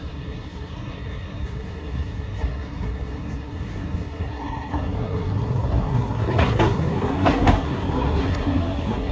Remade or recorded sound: remade